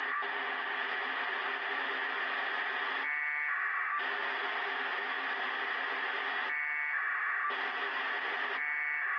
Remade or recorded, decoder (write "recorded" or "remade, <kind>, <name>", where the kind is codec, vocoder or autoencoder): recorded